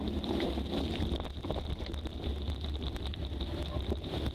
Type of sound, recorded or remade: recorded